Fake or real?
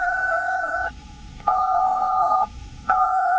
fake